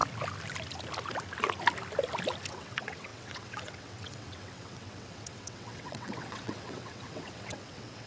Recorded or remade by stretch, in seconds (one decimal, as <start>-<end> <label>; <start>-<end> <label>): 0.0-2.5 recorded; 2.5-8.1 remade